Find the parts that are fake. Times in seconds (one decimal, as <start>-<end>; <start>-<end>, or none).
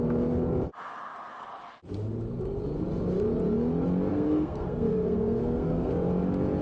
4.1-5.9